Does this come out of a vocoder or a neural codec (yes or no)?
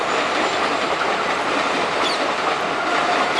no